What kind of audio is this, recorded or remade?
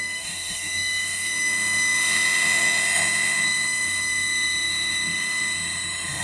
remade